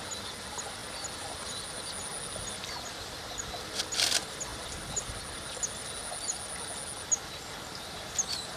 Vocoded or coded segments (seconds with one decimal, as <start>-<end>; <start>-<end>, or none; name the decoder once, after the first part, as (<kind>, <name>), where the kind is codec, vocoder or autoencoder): none